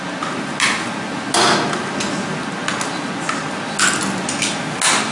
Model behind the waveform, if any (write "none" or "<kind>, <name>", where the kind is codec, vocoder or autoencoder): none